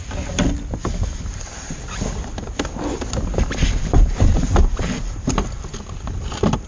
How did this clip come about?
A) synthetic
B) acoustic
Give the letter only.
B